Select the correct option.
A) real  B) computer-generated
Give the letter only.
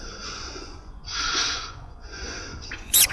B